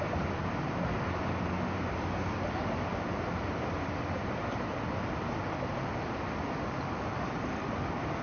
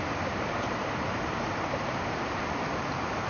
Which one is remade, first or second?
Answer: second